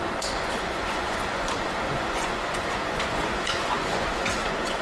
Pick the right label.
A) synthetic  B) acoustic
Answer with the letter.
A